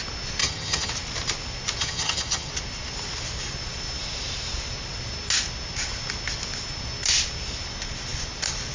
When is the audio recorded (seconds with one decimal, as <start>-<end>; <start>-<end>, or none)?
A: 0.0-0.4; 0.9-1.8; 2.5-8.7